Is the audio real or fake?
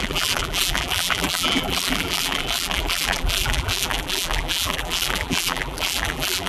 fake